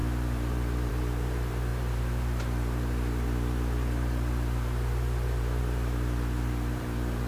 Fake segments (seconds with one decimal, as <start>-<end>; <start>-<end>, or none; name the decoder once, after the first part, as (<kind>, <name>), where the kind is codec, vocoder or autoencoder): 0.0-7.3 (vocoder, BigVGAN v2)